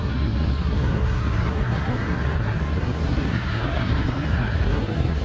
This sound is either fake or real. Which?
fake